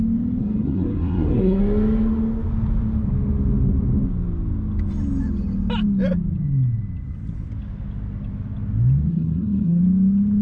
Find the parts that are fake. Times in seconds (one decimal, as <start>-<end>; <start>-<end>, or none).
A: 0.4-1.6; 9.1-9.8